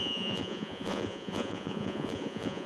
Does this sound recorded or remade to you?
remade